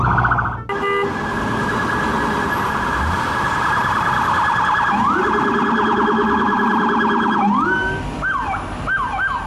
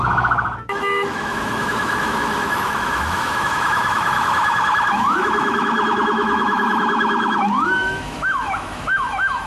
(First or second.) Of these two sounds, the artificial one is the second